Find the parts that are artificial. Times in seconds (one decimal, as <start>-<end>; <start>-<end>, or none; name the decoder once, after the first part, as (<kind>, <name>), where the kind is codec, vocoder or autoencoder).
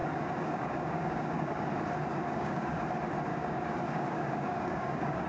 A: 0.0-1.7 (codec, DAC); 2.1-2.8; 3.3-5.3